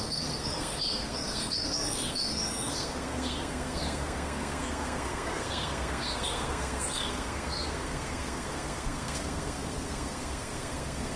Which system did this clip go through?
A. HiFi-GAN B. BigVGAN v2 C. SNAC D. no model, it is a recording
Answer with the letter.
C